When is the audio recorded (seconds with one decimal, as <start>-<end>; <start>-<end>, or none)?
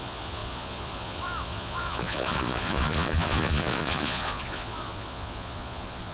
none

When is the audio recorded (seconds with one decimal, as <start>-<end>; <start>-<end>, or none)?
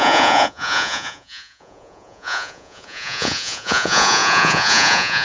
none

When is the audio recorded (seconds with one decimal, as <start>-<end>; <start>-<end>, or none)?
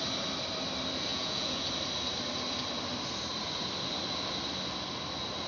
0.0-1.1; 1.6-5.5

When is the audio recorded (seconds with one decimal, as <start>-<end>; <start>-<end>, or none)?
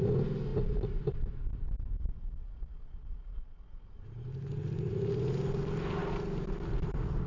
0.0-7.3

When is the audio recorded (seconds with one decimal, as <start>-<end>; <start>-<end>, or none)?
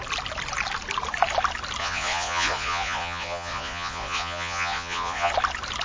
0.0-1.8; 5.3-5.8